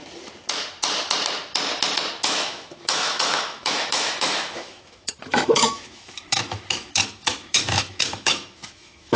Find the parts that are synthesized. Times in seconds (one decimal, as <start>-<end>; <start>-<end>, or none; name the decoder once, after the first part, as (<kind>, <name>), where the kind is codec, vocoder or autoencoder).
2.2-9.2 (autoencoder, DAC-VAE)